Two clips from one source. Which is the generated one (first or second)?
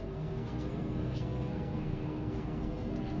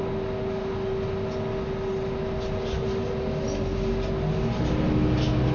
first